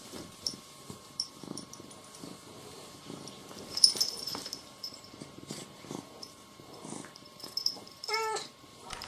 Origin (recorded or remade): remade